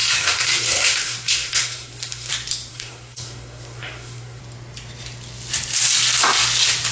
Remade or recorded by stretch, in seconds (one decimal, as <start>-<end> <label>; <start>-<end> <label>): 0.0-2.3 remade; 2.3-2.7 recorded; 2.7-4.4 remade; 4.4-6.9 recorded